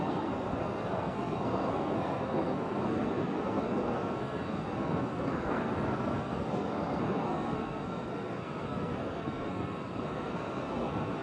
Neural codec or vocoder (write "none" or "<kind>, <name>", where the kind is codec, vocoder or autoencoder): codec, SNAC